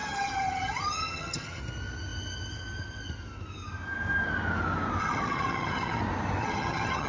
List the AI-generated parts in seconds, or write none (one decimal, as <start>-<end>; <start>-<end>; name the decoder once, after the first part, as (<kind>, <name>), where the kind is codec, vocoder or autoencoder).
0.0-1.6 (vocoder, HiFi-GAN); 5.0-6.0; 6.4-7.1